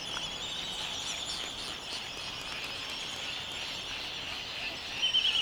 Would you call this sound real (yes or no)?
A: yes